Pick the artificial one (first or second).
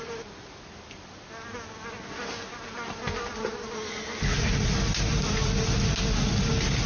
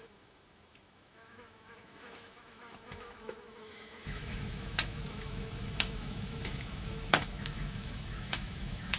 second